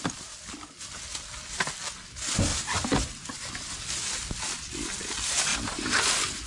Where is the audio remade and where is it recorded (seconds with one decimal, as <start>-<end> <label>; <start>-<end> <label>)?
0.0-2.5 recorded; 2.5-3.5 remade; 3.5-5.5 recorded; 5.5-6.0 remade; 6.0-6.5 recorded